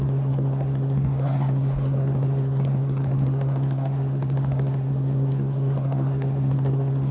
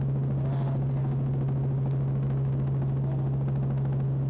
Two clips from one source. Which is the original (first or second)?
second